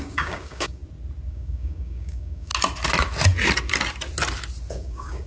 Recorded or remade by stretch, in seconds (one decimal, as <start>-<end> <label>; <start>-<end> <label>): 0.0-0.8 remade; 0.8-1.3 recorded; 1.3-2.5 remade; 2.5-4.7 recorded; 4.7-5.3 remade